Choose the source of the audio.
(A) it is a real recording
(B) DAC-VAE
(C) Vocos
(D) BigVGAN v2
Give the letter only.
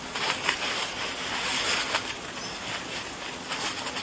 A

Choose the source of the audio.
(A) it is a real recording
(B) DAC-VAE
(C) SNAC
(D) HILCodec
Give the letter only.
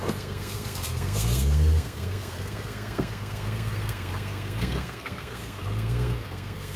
C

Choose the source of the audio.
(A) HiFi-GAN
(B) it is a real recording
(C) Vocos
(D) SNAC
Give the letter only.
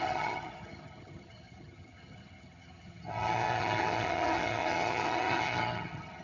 A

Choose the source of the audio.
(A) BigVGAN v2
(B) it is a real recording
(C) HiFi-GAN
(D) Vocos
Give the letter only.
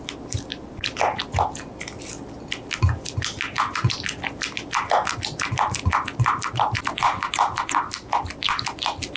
B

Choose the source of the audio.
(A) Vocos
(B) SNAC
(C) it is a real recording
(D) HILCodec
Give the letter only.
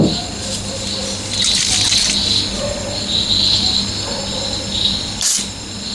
C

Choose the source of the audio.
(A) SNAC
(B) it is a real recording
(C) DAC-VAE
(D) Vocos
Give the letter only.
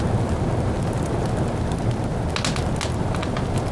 B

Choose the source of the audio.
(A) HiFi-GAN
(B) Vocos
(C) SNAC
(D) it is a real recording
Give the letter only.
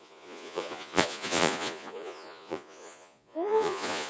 B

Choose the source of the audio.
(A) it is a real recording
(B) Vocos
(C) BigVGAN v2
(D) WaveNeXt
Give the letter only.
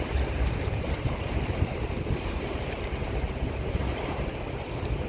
C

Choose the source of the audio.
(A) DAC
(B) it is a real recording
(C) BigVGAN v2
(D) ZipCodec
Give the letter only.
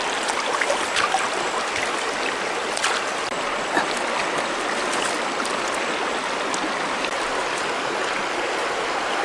B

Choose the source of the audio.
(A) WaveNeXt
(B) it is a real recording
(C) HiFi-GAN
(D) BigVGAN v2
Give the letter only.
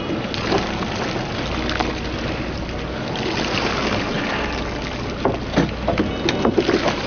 B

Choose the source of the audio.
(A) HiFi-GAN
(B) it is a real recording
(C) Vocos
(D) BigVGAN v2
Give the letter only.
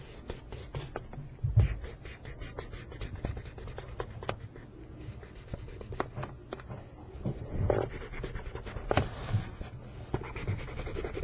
B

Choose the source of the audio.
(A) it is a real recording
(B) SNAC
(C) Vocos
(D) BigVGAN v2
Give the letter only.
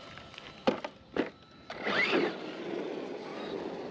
A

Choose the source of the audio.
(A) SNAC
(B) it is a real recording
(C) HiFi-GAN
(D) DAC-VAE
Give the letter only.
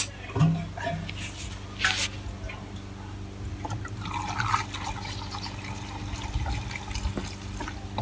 B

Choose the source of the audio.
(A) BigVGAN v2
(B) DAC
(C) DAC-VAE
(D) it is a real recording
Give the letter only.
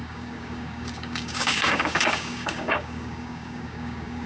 B